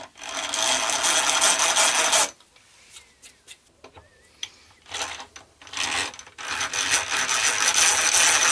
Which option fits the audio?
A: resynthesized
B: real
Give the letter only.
B